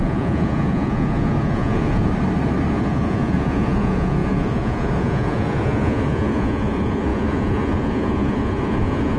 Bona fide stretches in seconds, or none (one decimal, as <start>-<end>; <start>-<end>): 2.1-2.7